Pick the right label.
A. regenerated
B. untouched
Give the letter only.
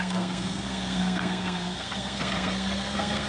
A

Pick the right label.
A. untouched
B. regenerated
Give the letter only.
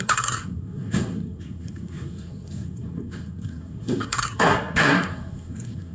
B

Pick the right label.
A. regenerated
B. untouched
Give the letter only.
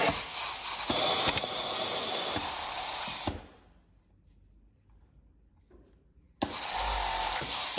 B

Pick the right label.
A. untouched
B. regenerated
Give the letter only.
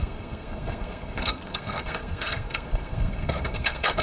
B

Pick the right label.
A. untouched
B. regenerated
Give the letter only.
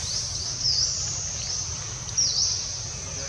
A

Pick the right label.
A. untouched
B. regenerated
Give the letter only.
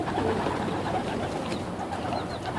A